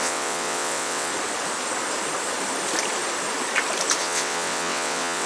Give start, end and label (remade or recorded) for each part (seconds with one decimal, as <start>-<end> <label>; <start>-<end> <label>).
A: 0.0-1.1 remade; 1.1-4.0 recorded; 4.0-5.3 remade